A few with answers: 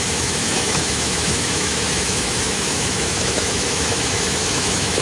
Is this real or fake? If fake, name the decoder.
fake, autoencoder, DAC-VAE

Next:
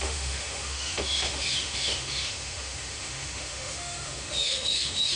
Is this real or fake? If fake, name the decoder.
fake, autoencoder, DAC-VAE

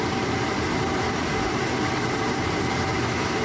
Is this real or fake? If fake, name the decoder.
real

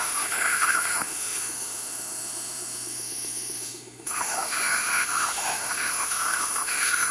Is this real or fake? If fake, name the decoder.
fake, autoencoder, DAC-VAE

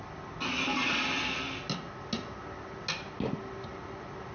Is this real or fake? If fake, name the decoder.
real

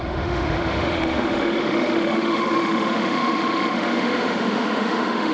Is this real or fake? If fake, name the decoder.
fake, autoencoder, DAC-VAE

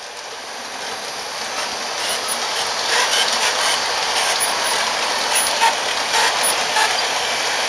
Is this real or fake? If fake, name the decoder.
real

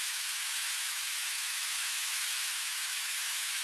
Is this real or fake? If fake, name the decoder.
fake, autoencoder, DAC-VAE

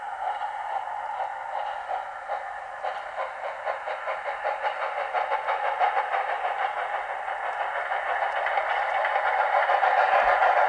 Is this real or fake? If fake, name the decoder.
real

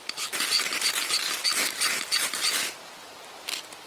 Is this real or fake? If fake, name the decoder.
real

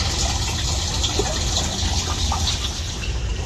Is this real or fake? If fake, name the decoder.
real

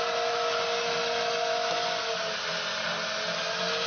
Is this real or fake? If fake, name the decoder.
real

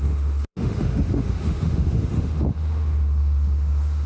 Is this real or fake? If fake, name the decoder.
fake, autoencoder, DAC-VAE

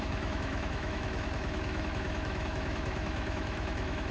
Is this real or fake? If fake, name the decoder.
fake, autoencoder, DAC-VAE